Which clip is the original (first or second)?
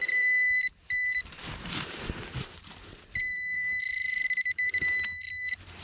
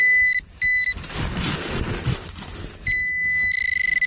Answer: second